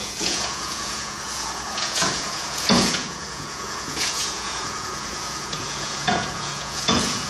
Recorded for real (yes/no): no